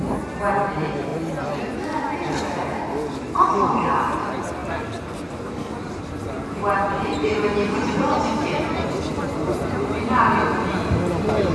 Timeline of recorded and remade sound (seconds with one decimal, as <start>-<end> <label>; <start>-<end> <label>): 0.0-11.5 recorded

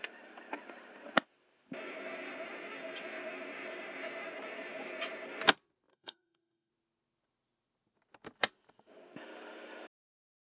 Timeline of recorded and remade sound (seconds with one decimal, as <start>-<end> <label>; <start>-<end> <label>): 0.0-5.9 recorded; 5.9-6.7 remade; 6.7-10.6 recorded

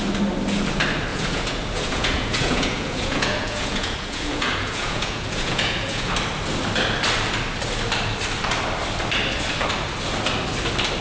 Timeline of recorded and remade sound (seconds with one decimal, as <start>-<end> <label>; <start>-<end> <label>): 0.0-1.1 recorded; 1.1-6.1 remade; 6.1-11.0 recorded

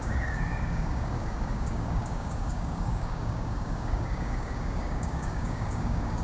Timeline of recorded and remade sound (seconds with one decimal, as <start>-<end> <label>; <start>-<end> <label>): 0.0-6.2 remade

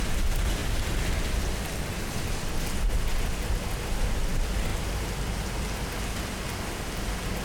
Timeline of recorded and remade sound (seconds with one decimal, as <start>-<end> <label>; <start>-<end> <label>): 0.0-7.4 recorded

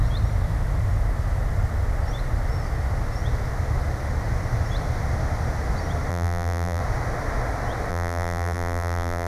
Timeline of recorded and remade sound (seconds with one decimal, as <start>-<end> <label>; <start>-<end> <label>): 0.0-6.1 recorded; 6.1-6.8 remade; 6.8-7.9 recorded; 7.9-9.3 remade

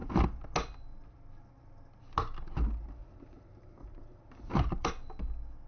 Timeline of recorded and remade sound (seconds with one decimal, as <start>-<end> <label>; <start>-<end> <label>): 0.0-3.0 recorded; 3.0-4.9 remade; 4.9-5.7 recorded